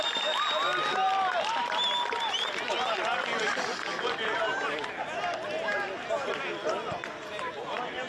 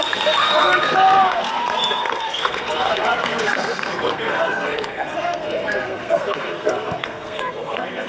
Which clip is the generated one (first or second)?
second